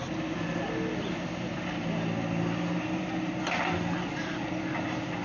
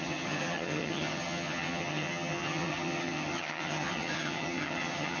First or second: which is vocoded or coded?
second